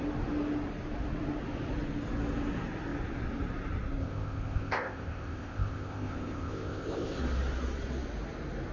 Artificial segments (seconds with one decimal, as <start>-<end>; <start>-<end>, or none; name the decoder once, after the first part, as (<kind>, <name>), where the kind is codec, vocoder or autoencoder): 4.0-7.2 (codec, ZipCodec)